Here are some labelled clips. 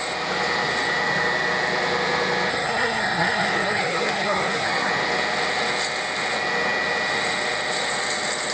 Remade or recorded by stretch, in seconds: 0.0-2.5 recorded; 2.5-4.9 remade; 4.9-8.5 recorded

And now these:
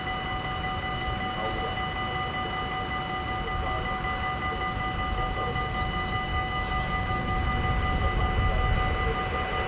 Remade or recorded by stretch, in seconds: 0.0-6.3 recorded; 6.3-7.5 remade; 7.5-9.7 recorded

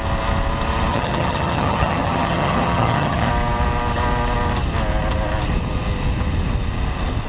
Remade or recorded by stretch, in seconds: 0.0-0.9 recorded; 0.9-3.3 remade; 3.3-7.3 recorded

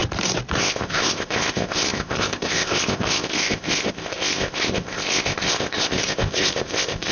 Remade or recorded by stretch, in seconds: 0.0-0.6 recorded; 0.6-7.1 remade

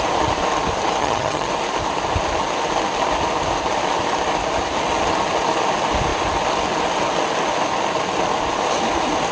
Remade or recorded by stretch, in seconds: 0.0-1.0 recorded; 1.0-1.5 remade; 1.5-9.3 recorded